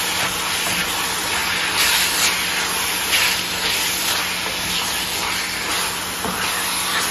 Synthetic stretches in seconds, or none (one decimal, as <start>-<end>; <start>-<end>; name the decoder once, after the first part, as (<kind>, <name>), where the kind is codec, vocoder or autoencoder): none